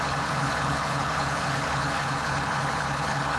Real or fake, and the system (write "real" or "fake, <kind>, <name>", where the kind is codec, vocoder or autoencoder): fake, codec, HILCodec